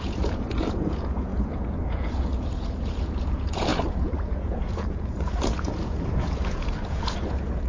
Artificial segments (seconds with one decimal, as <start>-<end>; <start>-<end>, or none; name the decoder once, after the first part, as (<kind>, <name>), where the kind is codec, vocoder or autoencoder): 0.0-7.7 (vocoder, Vocos)